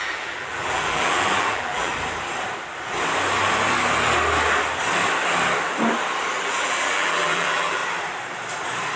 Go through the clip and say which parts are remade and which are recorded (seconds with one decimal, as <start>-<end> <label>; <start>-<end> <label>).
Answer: 0.0-1.9 remade; 1.9-6.4 recorded; 6.4-7.8 remade; 7.8-9.0 recorded